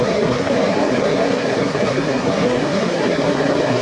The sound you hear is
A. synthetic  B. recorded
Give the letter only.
A